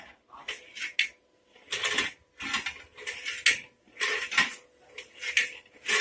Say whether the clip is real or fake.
real